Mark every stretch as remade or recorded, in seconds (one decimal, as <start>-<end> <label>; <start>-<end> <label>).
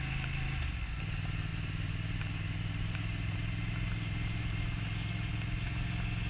0.0-1.5 recorded; 1.5-5.3 remade; 5.3-6.3 recorded